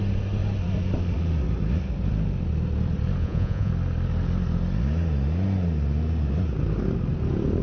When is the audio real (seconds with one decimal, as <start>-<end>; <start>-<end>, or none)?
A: 0.0-3.2; 3.7-7.6